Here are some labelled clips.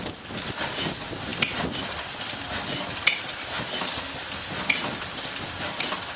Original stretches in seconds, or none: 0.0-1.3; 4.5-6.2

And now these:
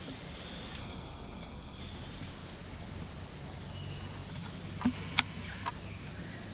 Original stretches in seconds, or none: 0.0-0.8; 1.8-6.5

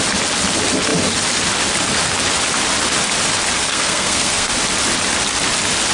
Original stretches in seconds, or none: 0.0-3.6; 4.5-5.9

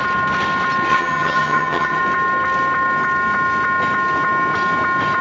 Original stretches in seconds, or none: 0.0-0.9; 2.0-5.2

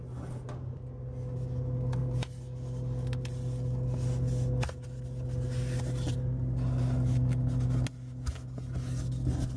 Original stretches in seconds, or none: 0.0-9.6